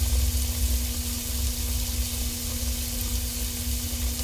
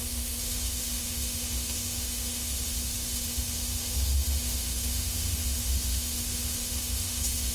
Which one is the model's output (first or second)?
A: second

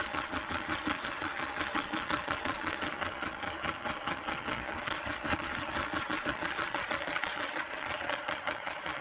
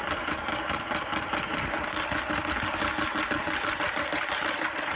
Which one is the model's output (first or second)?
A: first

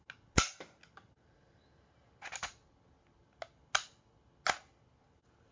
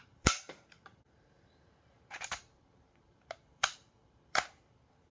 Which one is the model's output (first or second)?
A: second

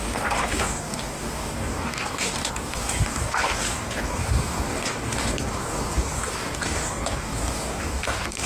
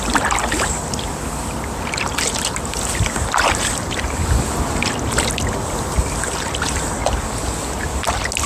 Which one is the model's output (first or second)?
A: first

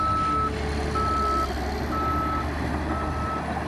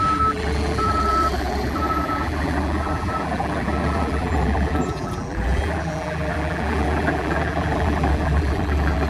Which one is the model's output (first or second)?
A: second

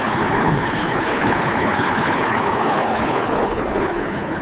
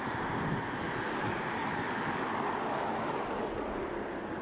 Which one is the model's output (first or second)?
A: first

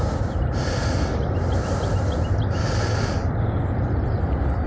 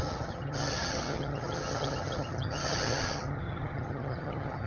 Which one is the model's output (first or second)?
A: second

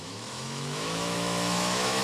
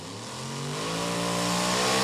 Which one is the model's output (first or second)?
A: first